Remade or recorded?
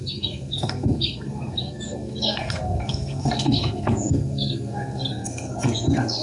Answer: remade